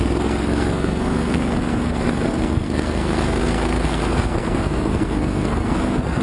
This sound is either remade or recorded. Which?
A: remade